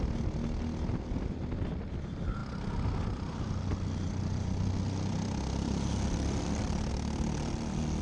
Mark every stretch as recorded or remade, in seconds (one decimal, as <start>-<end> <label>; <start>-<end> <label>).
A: 0.0-8.0 recorded

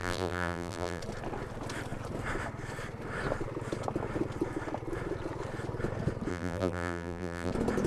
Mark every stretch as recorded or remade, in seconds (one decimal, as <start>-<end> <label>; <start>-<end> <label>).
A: 0.0-1.0 remade; 1.0-6.3 recorded; 6.3-7.5 remade; 7.5-7.9 recorded

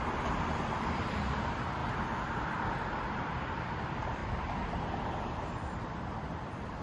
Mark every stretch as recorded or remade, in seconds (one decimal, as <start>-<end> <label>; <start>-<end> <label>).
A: 0.0-1.8 remade; 1.8-2.4 recorded; 2.4-4.2 remade; 4.2-5.1 recorded; 5.1-6.8 remade

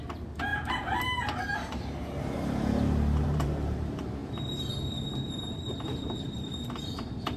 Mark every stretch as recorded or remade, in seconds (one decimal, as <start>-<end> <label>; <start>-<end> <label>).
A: 0.0-7.4 remade

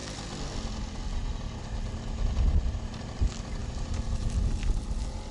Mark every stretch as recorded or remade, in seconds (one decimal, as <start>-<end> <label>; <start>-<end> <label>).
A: 0.0-5.3 recorded